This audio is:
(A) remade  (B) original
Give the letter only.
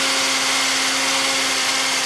B